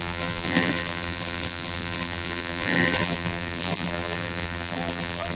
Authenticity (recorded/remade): remade